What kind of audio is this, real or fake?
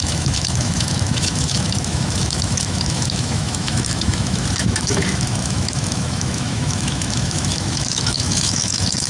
fake